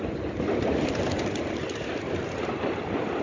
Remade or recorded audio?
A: recorded